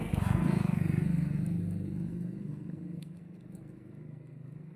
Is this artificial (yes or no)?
yes